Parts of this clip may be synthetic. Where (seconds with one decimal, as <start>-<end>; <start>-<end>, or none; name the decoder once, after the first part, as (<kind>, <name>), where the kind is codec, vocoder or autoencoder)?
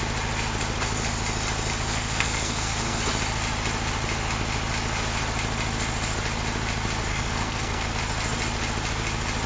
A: 1.9-3.0 (codec, SNAC); 7.1-7.9